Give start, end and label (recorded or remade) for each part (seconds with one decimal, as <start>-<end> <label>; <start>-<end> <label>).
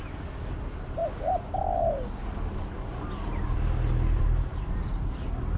0.0-5.6 recorded